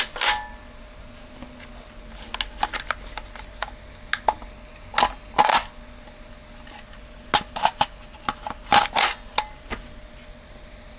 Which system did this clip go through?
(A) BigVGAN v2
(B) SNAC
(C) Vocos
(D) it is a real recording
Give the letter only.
D